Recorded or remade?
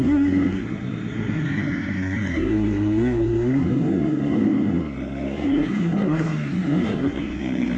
remade